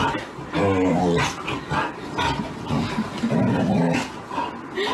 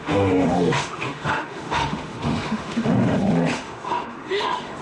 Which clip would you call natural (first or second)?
first